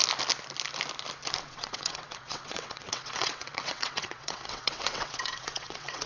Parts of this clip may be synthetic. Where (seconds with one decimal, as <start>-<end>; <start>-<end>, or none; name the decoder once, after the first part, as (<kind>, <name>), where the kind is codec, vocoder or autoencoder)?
1.4-6.1 (vocoder, WaveNeXt)